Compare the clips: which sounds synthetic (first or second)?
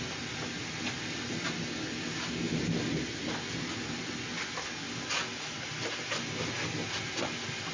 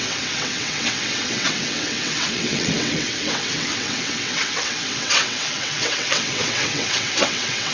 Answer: second